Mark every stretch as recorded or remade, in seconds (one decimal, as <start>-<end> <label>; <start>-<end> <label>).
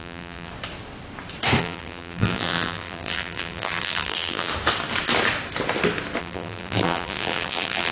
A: 0.0-0.5 remade; 0.5-1.6 recorded; 1.6-4.5 remade; 4.5-6.2 recorded; 6.2-7.9 remade